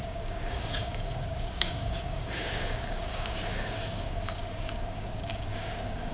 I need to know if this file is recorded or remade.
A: remade